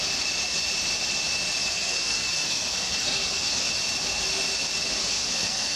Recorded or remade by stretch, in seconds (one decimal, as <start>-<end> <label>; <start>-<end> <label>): 0.0-1.6 recorded; 1.6-3.7 remade; 3.7-5.0 recorded; 5.0-5.8 remade